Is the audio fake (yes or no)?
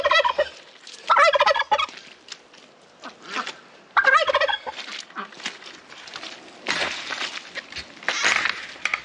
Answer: no